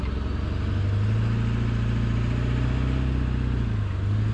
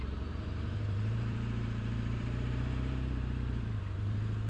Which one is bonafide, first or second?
first